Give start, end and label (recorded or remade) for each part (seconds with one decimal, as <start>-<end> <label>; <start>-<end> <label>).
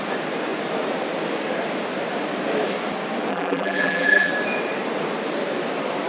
0.0-3.3 recorded; 3.3-4.3 remade; 4.3-6.1 recorded